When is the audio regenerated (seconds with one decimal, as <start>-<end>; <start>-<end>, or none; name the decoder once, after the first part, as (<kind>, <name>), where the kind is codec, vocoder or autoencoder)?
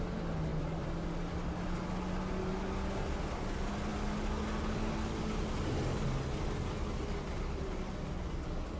none